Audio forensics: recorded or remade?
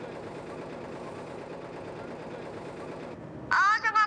recorded